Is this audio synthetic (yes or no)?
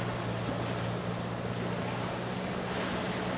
no